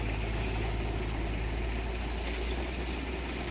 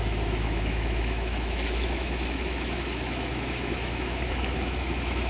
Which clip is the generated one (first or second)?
second